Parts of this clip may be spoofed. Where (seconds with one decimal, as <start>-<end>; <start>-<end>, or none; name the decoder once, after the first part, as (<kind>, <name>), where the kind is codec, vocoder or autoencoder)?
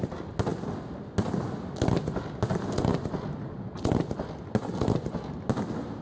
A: none